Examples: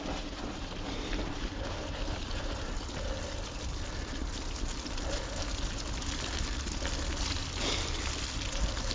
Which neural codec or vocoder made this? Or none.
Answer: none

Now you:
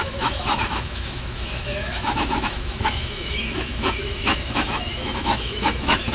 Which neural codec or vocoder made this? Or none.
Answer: autoencoder, DAC-VAE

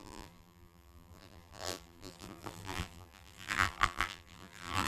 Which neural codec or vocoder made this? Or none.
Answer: vocoder, BigVGAN v2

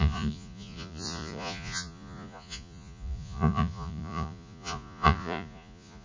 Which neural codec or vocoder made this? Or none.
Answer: vocoder, Vocos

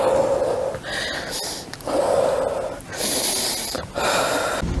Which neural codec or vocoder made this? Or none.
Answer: none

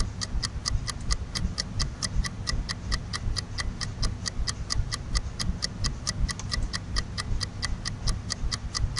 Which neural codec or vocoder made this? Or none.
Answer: none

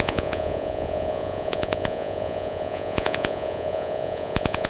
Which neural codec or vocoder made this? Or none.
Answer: vocoder, Vocos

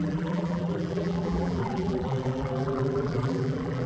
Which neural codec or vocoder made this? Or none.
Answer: vocoder, BigVGAN v2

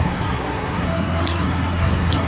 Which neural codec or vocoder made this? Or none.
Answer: codec, SNAC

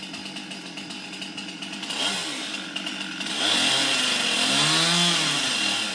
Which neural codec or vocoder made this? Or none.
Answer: none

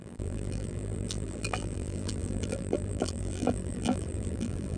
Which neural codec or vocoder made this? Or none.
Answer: vocoder, BigVGAN v2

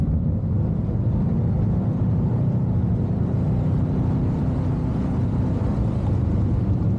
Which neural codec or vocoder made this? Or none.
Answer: vocoder, BigVGAN v2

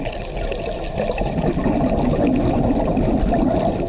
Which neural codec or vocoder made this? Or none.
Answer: none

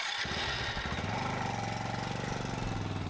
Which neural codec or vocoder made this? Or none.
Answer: none